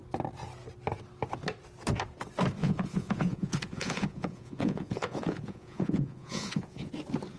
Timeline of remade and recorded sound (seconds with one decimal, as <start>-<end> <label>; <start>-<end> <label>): 0.0-2.6 recorded; 2.6-6.9 remade; 6.9-7.4 recorded